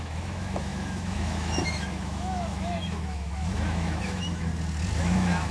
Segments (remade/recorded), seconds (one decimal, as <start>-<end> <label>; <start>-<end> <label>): 0.0-4.5 remade; 4.5-5.0 recorded; 5.0-5.5 remade